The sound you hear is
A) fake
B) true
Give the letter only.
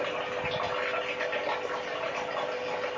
B